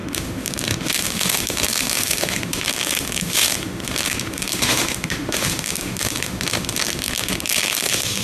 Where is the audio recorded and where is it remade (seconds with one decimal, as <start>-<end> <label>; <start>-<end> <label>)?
0.0-8.2 remade